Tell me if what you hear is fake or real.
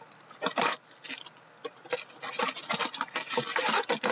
real